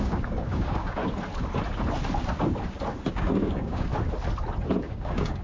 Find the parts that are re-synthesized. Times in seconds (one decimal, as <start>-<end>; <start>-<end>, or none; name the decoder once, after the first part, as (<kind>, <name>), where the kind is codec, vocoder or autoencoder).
0.0-1.0 (codec, DAC); 3.1-3.9; 4.8-5.4